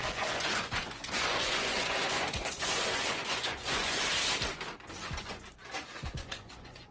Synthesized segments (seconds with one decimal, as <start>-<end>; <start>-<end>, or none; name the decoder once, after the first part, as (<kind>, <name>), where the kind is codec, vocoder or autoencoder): 0.0-4.1 (vocoder, Vocos); 5.0-6.9

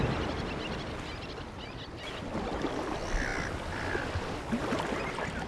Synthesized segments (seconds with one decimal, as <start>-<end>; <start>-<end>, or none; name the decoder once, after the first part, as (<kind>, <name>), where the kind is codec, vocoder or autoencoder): none

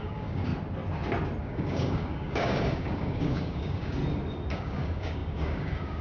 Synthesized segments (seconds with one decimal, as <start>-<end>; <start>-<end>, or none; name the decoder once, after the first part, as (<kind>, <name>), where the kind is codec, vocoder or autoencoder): 0.0-0.5 (codec, DAC); 1.4-4.0; 4.5-6.0

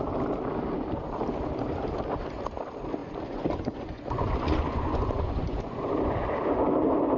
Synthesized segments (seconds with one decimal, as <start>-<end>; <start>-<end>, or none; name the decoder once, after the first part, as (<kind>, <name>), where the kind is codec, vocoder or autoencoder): 3.0-5.9 (vocoder, Vocos)

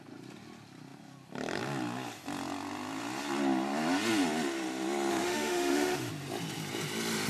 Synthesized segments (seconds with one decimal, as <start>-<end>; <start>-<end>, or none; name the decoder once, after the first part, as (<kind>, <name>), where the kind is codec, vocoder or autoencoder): 5.1-6.1 (autoencoder, DAC-VAE)